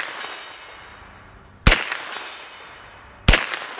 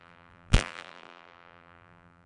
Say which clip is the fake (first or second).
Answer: second